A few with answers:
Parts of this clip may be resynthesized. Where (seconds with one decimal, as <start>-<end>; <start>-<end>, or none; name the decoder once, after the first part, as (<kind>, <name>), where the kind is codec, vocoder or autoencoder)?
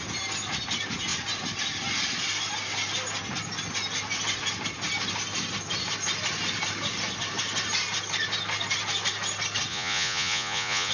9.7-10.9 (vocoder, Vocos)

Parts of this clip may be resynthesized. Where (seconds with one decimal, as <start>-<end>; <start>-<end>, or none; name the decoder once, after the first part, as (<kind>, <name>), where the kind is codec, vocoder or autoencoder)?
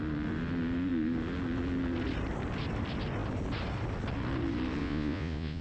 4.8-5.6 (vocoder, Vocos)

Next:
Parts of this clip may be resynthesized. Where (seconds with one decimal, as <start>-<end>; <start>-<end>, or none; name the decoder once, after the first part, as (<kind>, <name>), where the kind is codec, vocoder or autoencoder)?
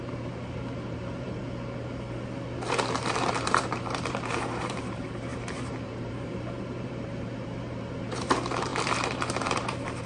0.0-1.4 (vocoder, BigVGAN v2); 3.3-10.1